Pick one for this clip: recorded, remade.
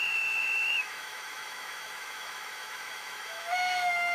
remade